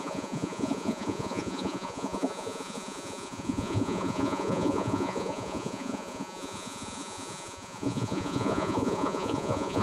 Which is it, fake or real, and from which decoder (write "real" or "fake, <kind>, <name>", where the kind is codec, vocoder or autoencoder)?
fake, vocoder, Vocos